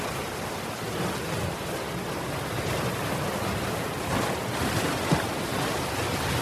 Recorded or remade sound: recorded